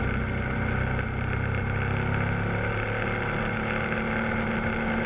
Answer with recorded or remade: recorded